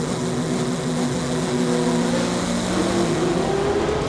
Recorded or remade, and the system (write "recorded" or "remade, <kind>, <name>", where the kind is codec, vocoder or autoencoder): recorded